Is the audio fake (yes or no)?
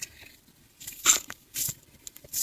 no